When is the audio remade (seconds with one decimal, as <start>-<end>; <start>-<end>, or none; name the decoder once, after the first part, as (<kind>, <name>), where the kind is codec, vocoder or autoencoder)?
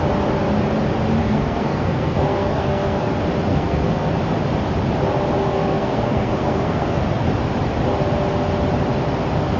1.2-3.1 (codec, SNAC); 3.5-4.1; 5.4-7.0